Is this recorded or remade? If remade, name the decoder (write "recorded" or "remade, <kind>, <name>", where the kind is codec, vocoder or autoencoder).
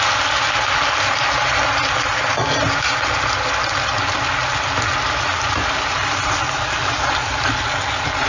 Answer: recorded